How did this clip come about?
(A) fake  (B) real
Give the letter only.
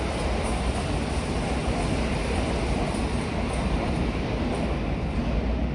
B